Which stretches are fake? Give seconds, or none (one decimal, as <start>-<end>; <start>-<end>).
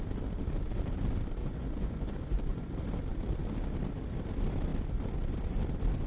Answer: 1.4-2.7